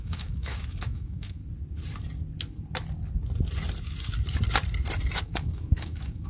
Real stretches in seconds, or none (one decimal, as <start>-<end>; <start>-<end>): 1.4-5.2